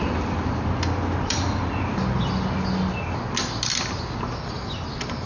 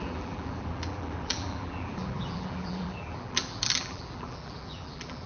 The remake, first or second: second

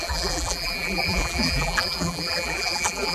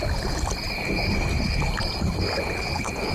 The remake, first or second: first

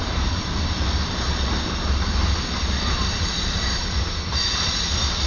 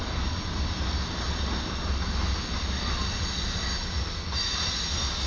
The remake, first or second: first